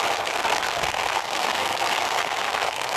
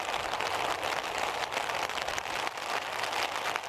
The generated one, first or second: first